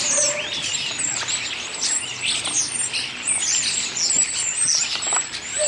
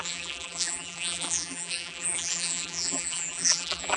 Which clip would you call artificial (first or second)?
second